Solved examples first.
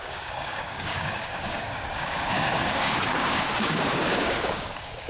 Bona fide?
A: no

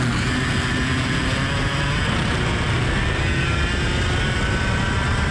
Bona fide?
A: yes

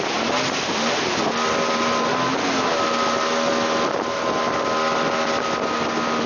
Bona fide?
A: yes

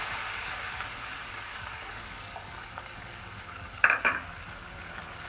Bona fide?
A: no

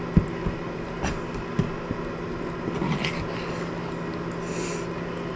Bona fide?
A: yes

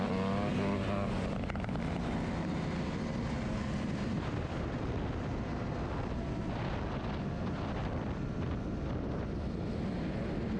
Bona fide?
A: yes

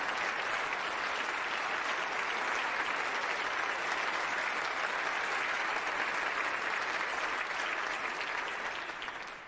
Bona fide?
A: yes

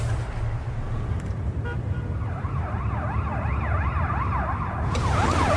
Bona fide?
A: yes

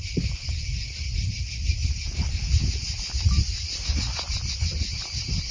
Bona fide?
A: yes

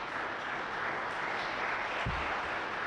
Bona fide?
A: yes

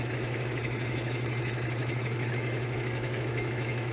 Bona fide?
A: no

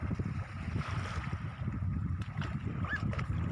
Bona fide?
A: yes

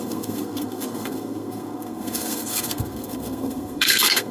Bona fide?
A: no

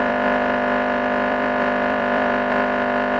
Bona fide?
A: no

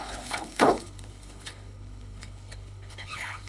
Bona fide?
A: no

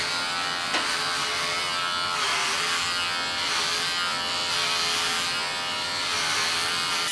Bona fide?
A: yes